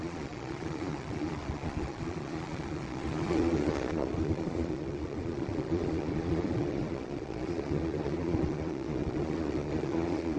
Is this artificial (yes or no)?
yes